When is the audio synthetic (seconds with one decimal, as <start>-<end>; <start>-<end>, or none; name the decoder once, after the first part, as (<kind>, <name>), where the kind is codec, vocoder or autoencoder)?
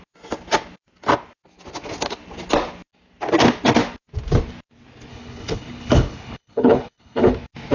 5.1-7.3 (codec, HILCodec)